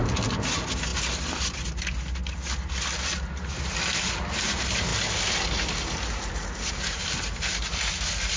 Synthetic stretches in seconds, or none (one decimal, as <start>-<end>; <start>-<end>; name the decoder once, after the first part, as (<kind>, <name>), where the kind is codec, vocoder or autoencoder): none